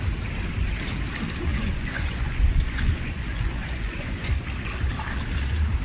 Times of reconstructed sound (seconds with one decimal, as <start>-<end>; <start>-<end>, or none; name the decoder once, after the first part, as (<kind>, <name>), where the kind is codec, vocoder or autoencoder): 1.5-4.3 (vocoder, Vocos)